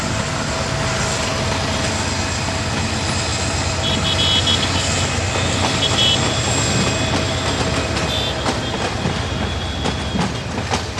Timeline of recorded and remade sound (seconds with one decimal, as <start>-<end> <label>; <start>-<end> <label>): 0.0-11.0 recorded